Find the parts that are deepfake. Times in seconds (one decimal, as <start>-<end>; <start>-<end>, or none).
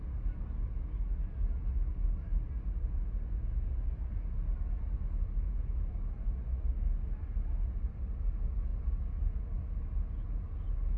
8.7-9.5